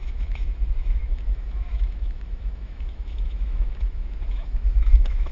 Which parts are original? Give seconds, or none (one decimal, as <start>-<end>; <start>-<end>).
none